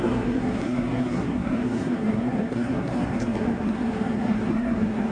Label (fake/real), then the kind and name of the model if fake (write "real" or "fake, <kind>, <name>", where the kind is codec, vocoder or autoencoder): fake, codec, SNAC